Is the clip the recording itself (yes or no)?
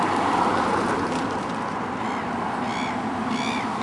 yes